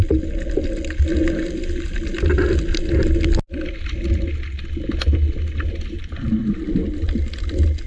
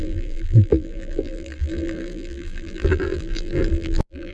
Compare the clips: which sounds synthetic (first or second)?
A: second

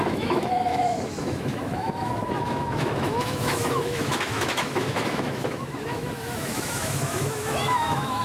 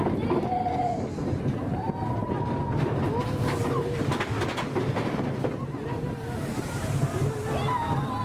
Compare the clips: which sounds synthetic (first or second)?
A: first